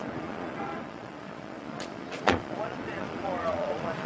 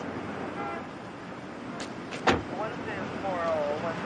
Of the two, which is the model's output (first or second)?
first